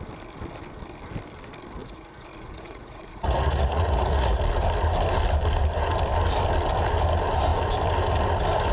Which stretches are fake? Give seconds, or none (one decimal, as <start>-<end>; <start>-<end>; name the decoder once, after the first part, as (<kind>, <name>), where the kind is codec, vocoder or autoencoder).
1.8-4.4 (vocoder, Vocos)